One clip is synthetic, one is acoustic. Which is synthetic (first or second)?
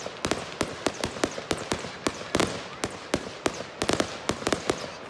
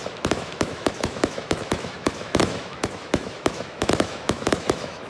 second